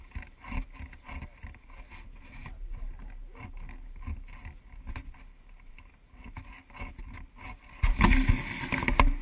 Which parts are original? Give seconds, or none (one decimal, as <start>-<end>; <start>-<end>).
0.0-9.2